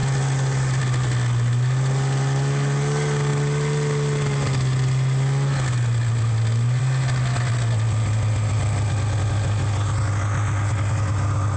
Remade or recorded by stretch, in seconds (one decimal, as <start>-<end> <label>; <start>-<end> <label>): 0.0-11.6 recorded